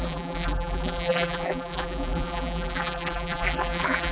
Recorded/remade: remade